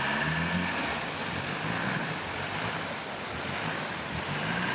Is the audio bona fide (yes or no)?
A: yes